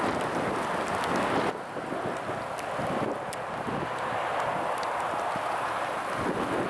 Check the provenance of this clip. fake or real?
real